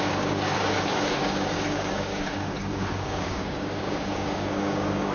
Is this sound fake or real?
fake